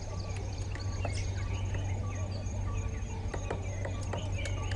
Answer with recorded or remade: recorded